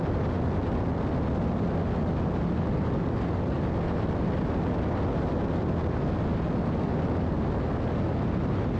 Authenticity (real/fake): real